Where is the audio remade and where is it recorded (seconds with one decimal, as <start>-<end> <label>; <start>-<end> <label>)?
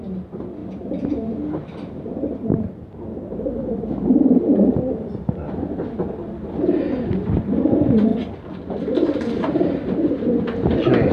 0.0-0.6 recorded; 0.6-1.9 remade; 1.9-11.1 recorded